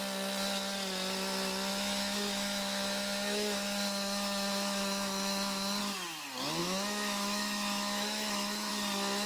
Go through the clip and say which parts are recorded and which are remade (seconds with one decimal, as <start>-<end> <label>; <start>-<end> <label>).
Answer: 0.0-1.7 recorded; 1.7-5.8 remade; 5.8-6.6 recorded; 6.6-8.7 remade; 8.7-9.3 recorded